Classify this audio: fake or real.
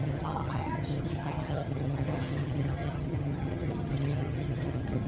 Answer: fake